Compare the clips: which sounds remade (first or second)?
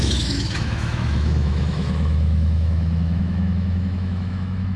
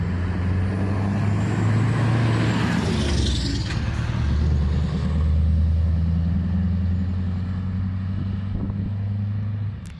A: first